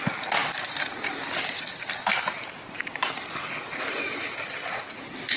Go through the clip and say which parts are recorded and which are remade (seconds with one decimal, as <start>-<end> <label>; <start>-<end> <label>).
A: 0.0-5.4 recorded